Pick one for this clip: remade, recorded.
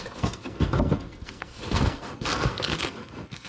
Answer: remade